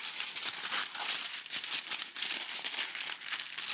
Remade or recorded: recorded